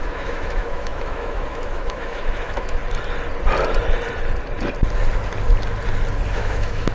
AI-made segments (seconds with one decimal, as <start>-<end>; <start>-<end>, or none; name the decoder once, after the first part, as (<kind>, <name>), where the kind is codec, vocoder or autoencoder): 0.0-2.8 (autoencoder, DAC-VAE); 6.3-6.9